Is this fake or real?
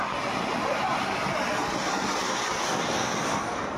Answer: real